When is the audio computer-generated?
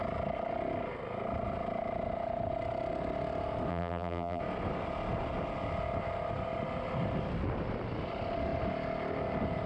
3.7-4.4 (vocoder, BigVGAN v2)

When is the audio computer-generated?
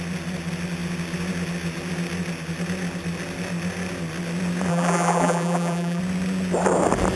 4.7-6.0 (vocoder, BigVGAN v2)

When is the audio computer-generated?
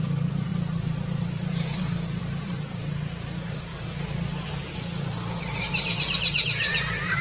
0.0-3.7 (vocoder, BigVGAN v2); 5.6-7.2